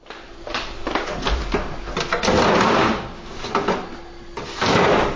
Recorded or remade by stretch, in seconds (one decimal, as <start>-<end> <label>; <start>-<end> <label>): 0.0-2.8 recorded; 2.8-3.4 remade; 3.4-5.2 recorded